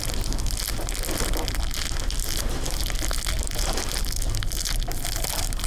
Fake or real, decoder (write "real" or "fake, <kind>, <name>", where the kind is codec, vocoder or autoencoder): real